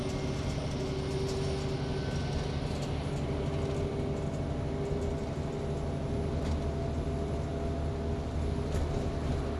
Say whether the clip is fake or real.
real